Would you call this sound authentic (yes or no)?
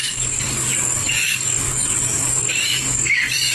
no